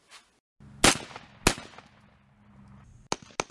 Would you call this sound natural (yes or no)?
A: yes